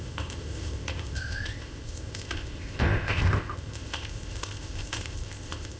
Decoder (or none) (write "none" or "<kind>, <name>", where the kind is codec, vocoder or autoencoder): codec, ZipCodec